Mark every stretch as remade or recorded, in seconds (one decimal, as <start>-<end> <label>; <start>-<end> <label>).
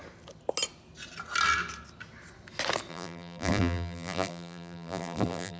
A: 0.0-2.9 recorded; 2.9-5.6 remade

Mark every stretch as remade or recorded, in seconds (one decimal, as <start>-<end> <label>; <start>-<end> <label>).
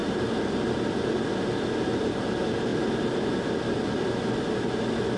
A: 0.0-5.2 recorded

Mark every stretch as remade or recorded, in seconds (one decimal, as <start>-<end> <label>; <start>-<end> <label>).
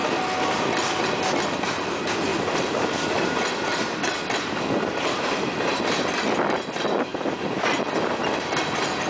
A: 0.0-2.3 recorded; 2.3-5.8 remade; 5.8-7.1 recorded; 7.1-7.8 remade; 7.8-9.1 recorded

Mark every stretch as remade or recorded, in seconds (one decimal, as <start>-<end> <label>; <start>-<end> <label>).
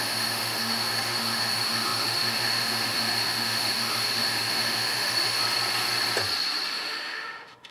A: 0.0-5.4 remade; 5.4-6.7 recorded; 6.7-7.7 remade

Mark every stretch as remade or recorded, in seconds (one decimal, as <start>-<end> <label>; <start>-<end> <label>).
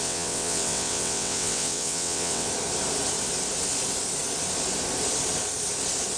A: 0.0-2.5 remade; 2.5-6.2 recorded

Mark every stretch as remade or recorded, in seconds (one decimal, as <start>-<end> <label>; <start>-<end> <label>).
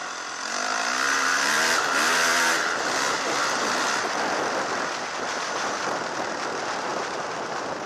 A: 0.0-7.9 recorded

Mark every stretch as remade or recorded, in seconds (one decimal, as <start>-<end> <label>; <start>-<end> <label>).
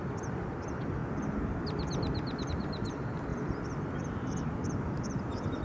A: 0.0-1.0 remade; 1.0-2.5 recorded; 2.5-3.3 remade; 3.3-3.8 recorded; 3.8-5.6 remade